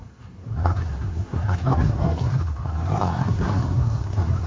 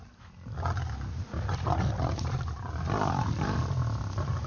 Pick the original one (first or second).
second